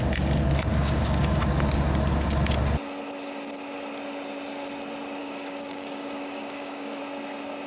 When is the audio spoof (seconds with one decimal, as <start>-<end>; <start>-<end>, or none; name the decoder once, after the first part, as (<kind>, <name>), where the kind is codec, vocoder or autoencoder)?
0.7-1.4 (codec, DAC); 5.2-7.0